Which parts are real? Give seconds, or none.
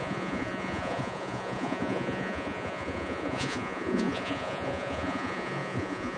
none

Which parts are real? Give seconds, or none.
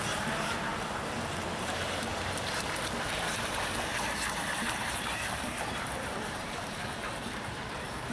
0.7-1.6; 2.1-3.1; 3.9-4.4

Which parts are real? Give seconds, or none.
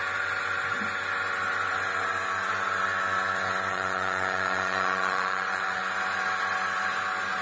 0.0-3.7; 5.8-7.4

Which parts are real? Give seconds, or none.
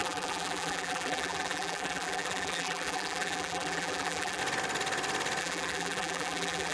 4.4-5.4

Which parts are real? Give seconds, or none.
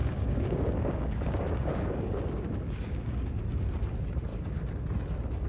3.3-4.3; 4.8-5.5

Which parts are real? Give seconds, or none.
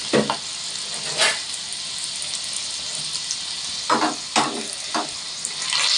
0.0-6.0